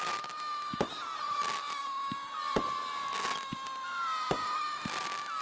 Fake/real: real